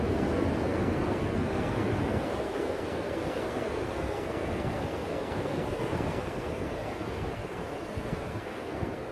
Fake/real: fake